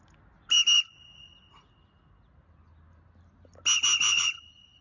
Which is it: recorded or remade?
recorded